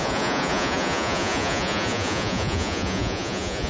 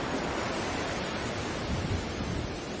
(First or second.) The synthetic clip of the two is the first